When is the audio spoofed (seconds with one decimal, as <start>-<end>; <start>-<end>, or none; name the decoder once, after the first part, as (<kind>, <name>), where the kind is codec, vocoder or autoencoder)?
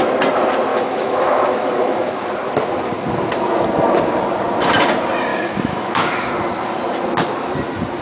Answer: 0.7-2.3 (autoencoder, DAC-VAE); 5.3-6.2